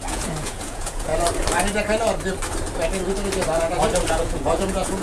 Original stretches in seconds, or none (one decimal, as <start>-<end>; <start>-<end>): 1.1-4.1